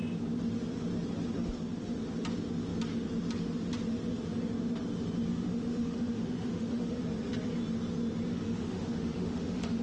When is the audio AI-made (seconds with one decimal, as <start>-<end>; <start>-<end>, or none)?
5.3-7.0; 8.3-9.8